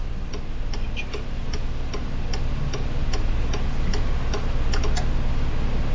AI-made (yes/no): no